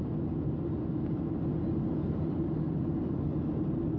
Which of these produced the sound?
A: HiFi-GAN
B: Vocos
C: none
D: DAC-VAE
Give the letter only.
C